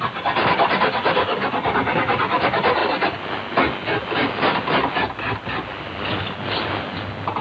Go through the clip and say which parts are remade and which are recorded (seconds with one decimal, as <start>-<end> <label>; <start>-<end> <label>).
0.0-7.4 recorded